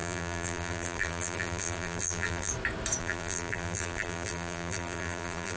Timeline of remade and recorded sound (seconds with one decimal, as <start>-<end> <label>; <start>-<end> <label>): 0.0-2.5 remade; 2.5-3.0 recorded; 3.0-5.6 remade